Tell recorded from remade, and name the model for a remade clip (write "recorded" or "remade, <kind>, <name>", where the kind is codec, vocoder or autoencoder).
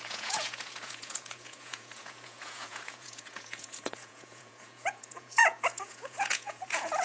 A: remade, vocoder, Vocos